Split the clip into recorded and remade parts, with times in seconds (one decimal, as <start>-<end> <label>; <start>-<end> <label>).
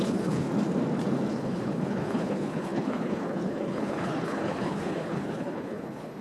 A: 0.0-0.5 remade; 0.5-1.3 recorded; 1.3-6.2 remade